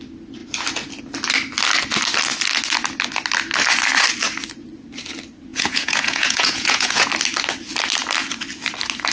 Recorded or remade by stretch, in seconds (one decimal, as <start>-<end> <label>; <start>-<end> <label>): 0.0-5.5 recorded; 5.5-7.1 remade; 7.1-9.1 recorded